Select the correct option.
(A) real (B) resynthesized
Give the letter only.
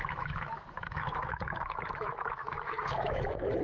B